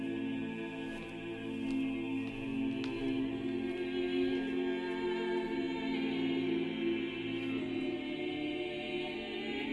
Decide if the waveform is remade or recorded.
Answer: recorded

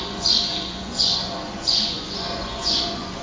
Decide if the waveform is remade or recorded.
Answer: remade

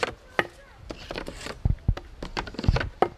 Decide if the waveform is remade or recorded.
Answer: recorded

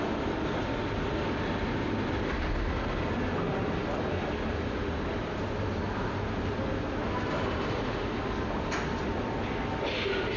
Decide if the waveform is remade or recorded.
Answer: recorded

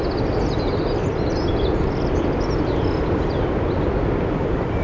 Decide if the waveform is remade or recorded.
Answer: recorded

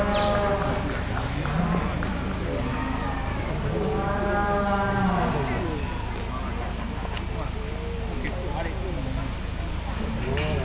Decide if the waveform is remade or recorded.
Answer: recorded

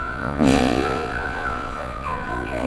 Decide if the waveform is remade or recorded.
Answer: remade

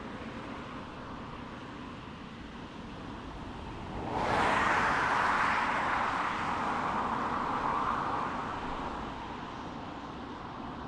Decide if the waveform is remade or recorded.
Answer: recorded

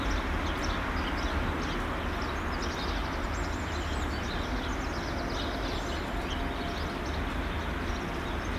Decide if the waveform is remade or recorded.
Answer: recorded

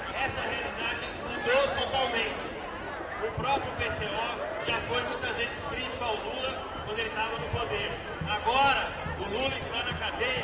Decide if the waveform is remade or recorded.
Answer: recorded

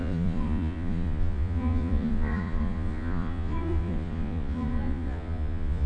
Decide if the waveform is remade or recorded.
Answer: remade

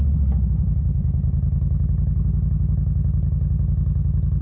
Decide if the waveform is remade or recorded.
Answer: recorded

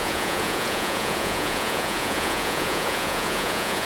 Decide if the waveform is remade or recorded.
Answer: remade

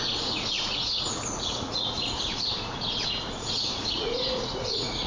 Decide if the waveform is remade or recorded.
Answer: remade